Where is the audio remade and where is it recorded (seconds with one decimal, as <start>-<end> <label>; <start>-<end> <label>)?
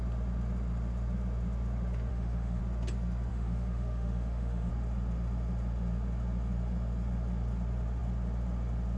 0.0-2.1 recorded; 2.1-2.6 remade; 2.6-3.3 recorded; 3.3-4.7 remade; 4.7-9.0 recorded